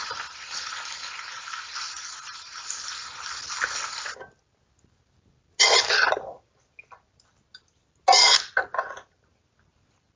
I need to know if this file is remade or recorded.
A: recorded